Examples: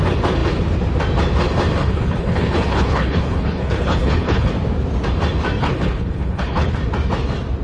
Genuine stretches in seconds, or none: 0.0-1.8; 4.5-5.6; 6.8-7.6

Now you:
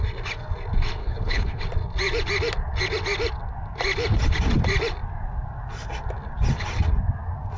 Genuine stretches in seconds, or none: 0.0-1.0; 1.6-7.6

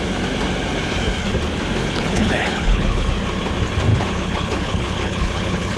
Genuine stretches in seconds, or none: 0.0-1.8; 3.1-3.9